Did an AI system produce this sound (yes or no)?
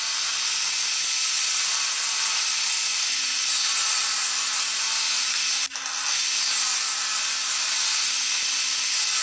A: no